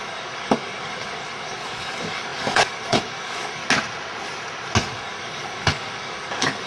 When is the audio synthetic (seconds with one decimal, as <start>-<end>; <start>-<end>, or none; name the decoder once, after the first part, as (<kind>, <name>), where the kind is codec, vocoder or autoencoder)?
0.0-3.6 (codec, DAC); 4.8-6.7